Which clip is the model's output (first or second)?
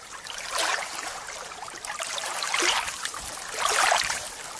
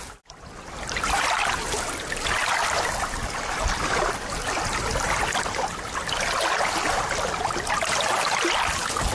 first